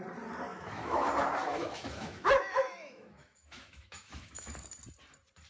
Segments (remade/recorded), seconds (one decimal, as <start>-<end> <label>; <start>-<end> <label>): 0.0-0.5 recorded; 0.5-1.1 remade; 1.1-1.5 recorded; 1.5-4.5 remade; 4.5-5.5 recorded

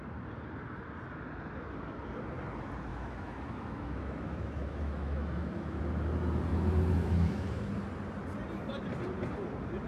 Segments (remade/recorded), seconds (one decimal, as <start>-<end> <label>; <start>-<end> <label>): 0.0-2.9 recorded; 2.9-5.8 remade; 5.8-6.5 recorded; 6.5-7.7 remade; 7.7-9.9 recorded

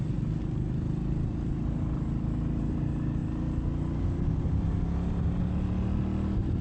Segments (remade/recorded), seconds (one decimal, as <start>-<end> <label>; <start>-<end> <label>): 0.0-6.6 recorded